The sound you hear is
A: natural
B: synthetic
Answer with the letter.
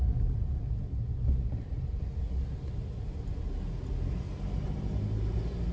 A